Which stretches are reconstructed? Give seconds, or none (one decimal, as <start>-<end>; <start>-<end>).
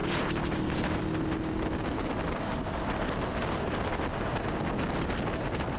none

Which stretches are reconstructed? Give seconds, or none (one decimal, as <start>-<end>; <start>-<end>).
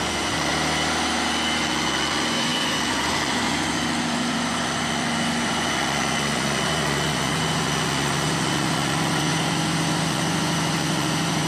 0.0-0.5; 1.6-11.5